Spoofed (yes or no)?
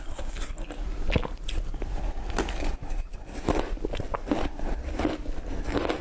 no